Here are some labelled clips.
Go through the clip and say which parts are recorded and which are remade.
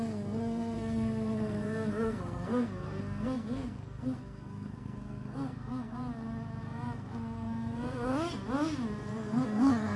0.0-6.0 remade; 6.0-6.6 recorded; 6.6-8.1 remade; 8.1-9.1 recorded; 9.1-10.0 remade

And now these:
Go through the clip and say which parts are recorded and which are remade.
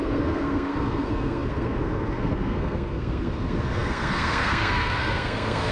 0.0-5.7 remade